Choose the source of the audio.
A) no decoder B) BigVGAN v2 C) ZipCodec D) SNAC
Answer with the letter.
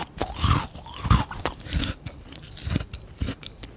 A